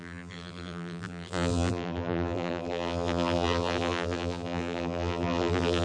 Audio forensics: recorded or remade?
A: remade